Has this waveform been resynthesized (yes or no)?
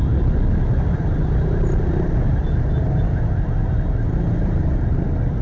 no